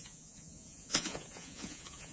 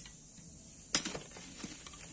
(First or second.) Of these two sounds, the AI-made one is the first